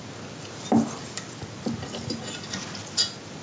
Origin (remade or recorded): recorded